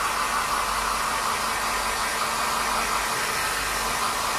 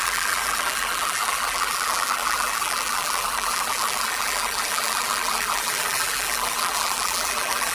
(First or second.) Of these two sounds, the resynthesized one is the second